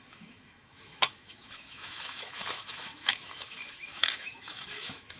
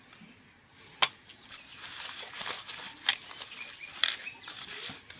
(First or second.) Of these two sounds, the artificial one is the first